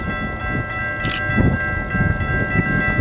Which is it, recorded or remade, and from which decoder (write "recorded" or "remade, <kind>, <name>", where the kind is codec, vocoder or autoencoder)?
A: recorded